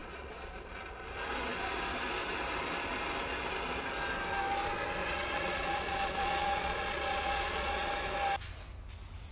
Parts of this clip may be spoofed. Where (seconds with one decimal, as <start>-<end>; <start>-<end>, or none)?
0.0-0.7; 5.0-7.9